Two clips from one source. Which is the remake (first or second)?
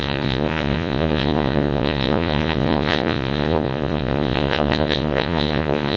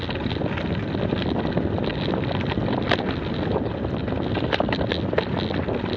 first